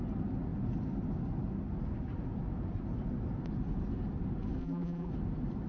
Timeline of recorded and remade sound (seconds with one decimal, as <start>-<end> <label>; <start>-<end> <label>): 0.0-4.6 recorded; 4.6-5.1 remade; 5.1-5.7 recorded